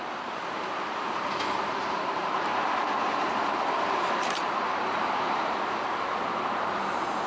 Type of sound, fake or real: fake